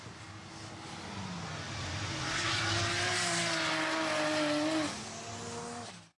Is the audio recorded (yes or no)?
yes